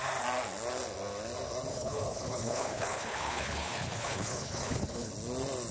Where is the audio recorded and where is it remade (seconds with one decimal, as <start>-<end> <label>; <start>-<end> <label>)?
0.0-1.7 recorded; 1.7-5.1 remade; 5.1-5.7 recorded